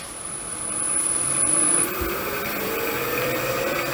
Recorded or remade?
remade